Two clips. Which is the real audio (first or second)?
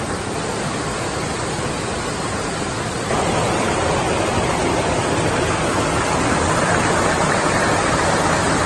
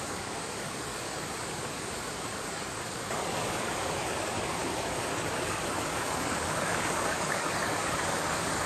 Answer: first